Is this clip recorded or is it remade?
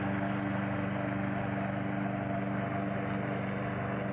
recorded